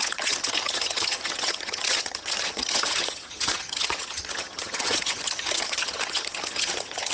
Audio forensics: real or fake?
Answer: fake